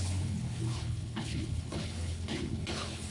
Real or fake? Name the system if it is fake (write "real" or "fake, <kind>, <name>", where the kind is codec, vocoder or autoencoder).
fake, codec, HILCodec